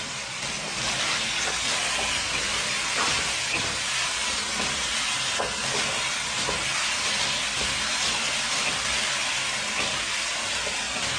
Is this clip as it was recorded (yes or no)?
yes